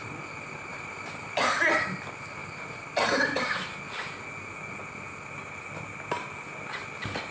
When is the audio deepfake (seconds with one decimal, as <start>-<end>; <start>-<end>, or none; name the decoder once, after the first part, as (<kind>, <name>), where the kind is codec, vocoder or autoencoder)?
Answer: 0.7-1.4 (vocoder, BigVGAN v2); 2.4-3.7